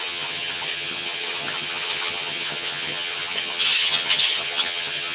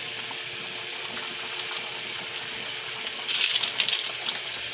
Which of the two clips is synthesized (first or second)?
first